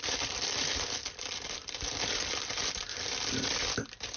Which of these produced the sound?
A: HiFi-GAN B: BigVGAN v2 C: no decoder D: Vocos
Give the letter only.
B